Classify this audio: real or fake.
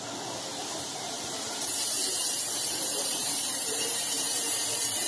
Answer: fake